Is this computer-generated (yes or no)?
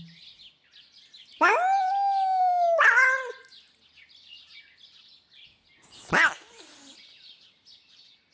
no